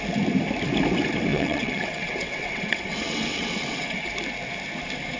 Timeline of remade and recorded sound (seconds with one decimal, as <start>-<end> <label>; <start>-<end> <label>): 0.0-1.3 recorded; 1.3-4.1 remade; 4.1-5.2 recorded